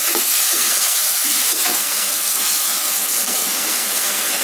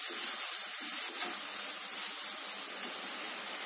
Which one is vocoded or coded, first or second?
first